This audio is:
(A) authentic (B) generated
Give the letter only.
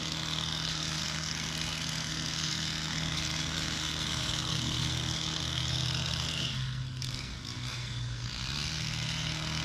B